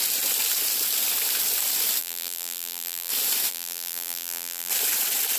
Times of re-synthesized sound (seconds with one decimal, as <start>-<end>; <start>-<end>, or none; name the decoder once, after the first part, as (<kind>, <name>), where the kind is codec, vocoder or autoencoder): 2.0-3.1 (vocoder, BigVGAN v2); 3.5-4.7